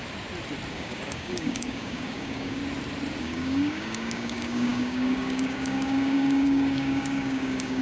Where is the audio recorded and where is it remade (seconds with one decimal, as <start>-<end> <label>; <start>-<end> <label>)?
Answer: 0.0-0.7 recorded; 0.7-2.6 remade; 2.6-3.2 recorded; 3.2-7.8 remade